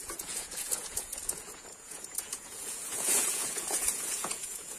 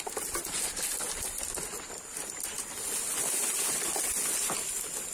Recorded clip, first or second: second